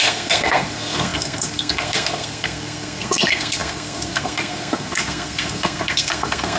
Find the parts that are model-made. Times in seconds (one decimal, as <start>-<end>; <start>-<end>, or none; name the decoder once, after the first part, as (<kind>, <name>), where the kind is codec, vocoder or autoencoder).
0.0-6.6 (codec, SNAC)